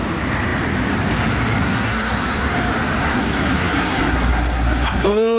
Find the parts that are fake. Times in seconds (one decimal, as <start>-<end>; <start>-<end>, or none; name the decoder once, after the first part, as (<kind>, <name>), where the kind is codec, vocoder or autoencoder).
1.6-2.5 (codec, SNAC); 3.0-5.4